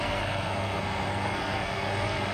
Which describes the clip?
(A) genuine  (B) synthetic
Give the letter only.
B